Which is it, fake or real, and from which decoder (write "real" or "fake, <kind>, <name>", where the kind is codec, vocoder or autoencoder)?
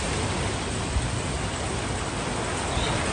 real